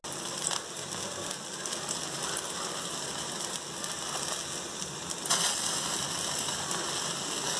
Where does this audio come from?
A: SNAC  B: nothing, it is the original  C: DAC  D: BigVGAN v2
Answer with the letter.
B